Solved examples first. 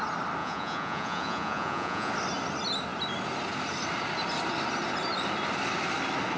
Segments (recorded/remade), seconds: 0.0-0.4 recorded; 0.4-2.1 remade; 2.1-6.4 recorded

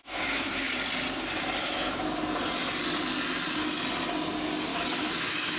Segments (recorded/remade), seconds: 0.0-0.7 remade; 0.7-1.6 recorded; 1.6-2.2 remade; 2.2-4.7 recorded; 4.7-5.6 remade

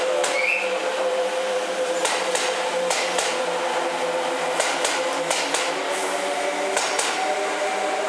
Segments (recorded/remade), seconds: 0.0-8.1 recorded

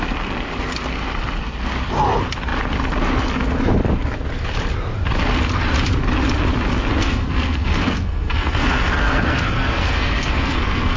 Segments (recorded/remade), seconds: 0.0-6.9 recorded; 6.9-11.0 remade

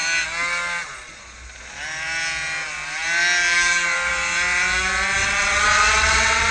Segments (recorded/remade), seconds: 0.0-5.2 recorded; 5.2-6.5 remade